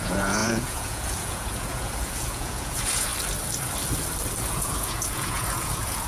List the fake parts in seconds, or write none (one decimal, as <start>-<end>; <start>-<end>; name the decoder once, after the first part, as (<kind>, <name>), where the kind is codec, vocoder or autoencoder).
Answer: 0.0-3.1 (vocoder, Vocos); 4.4-6.1